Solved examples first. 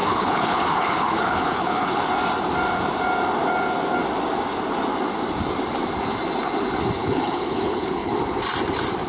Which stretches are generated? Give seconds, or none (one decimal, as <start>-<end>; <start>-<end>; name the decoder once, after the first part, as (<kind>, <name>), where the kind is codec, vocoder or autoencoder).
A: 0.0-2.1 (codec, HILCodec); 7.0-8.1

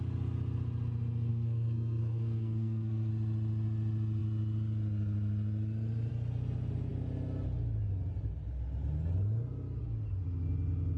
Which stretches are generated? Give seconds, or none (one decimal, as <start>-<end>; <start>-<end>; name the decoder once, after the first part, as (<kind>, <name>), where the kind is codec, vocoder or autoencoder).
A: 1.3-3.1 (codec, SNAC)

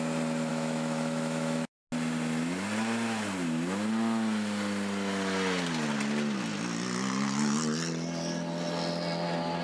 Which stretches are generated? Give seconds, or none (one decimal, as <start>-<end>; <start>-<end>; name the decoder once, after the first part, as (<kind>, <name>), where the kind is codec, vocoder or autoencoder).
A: 0.5-1.7 (autoencoder, DAC-VAE)